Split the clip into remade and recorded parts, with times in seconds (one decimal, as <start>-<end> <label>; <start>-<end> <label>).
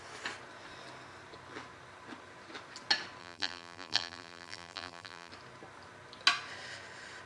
0.0-3.2 recorded; 3.2-5.3 remade; 5.3-7.3 recorded